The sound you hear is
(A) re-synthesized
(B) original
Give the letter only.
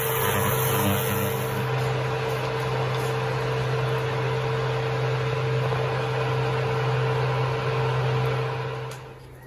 B